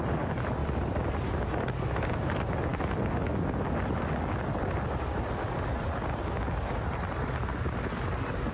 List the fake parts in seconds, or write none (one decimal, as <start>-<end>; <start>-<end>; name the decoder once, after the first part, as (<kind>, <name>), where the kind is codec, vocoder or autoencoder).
none